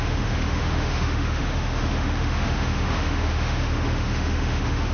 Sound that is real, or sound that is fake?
fake